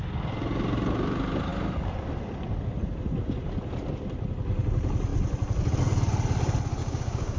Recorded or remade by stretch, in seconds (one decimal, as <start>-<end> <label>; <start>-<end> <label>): 0.0-6.8 recorded; 6.8-7.4 remade